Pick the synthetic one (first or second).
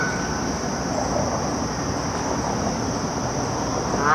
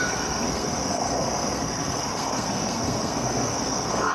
second